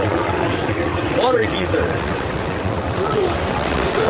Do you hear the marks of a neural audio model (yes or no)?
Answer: yes